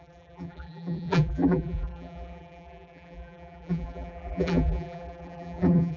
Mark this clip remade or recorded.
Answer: remade